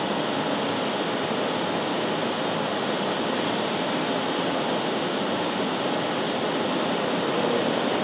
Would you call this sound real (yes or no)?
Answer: yes